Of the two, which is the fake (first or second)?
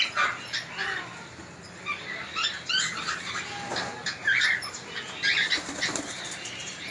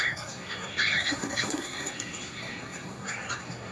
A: second